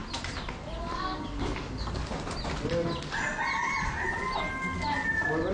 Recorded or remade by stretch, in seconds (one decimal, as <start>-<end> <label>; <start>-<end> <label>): 0.0-0.8 recorded; 0.8-2.0 remade; 2.0-5.5 recorded